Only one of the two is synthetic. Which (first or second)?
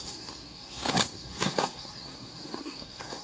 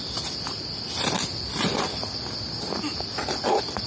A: first